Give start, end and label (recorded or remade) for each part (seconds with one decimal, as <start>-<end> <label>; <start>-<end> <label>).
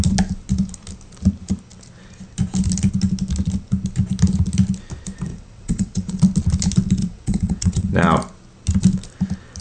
0.0-5.3 recorded; 5.3-6.2 remade; 6.2-7.0 recorded; 7.0-7.9 remade; 7.9-9.6 recorded